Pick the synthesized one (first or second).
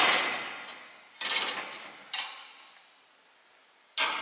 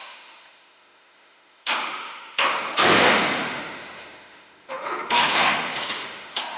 second